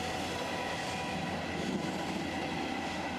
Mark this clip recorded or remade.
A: recorded